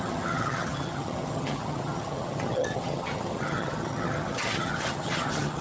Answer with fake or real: fake